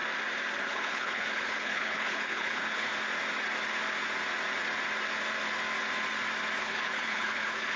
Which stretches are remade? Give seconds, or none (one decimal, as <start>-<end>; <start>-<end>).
0.6-2.9; 6.6-7.8